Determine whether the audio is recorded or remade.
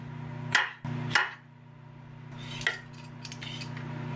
recorded